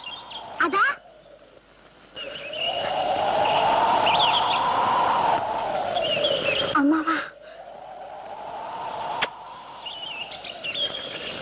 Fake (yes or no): no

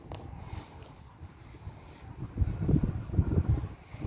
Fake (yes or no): no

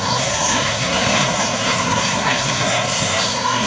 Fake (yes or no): yes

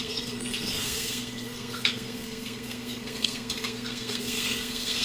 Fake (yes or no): yes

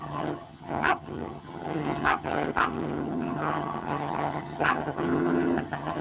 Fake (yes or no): yes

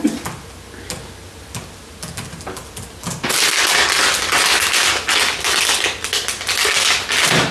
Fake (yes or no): no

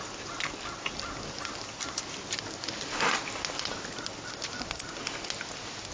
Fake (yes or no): no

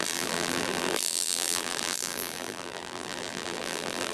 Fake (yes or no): yes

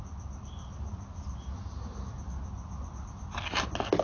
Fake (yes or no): no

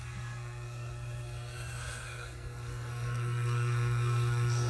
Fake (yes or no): yes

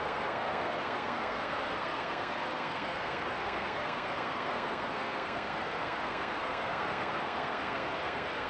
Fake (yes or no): yes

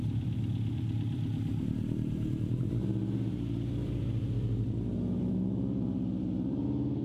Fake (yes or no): yes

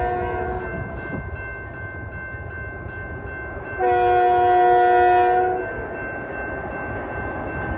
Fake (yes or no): no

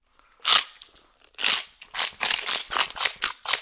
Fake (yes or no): no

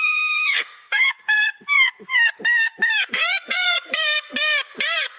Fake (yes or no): yes